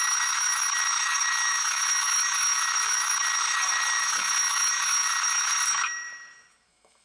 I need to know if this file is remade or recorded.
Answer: remade